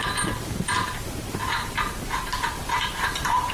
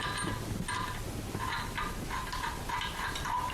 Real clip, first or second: second